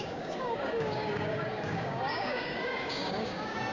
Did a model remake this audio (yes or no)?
yes